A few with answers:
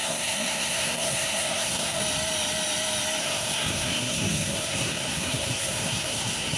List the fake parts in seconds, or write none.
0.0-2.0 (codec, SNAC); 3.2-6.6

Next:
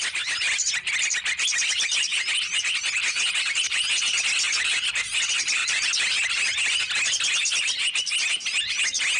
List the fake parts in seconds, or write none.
none

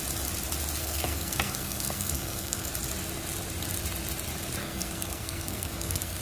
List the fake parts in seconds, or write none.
0.8-2.7 (codec, SNAC); 4.6-6.2

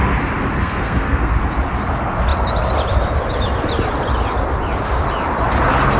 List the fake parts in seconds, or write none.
0.6-1.3 (codec, SNAC)

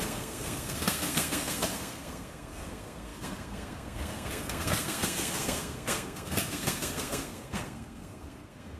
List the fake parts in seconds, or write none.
0.0-8.8 (codec, SNAC)

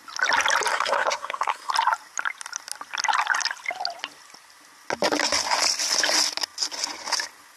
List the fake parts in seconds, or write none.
0.7-1.7 (codec, SNAC)

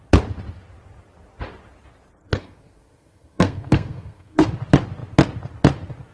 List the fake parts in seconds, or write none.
2.2-4.5 (codec, SNAC)